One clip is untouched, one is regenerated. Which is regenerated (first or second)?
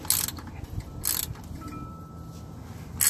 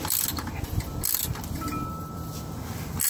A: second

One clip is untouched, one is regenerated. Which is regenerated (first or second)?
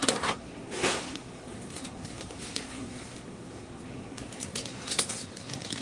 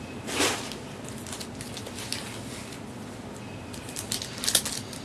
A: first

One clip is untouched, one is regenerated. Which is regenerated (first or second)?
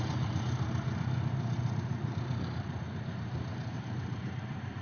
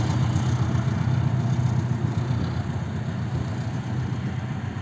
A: first